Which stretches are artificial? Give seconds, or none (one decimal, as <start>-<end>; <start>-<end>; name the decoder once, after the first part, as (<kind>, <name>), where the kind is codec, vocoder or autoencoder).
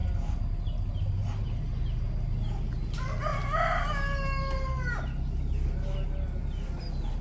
none